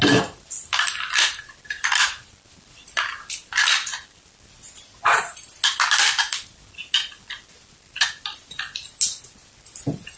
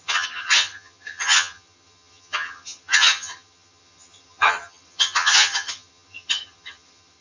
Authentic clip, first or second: first